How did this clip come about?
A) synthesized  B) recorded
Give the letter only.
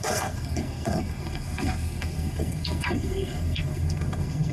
A